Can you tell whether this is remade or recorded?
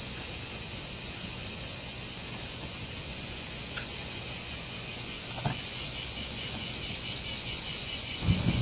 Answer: remade